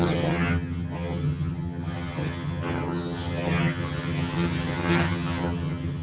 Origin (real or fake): fake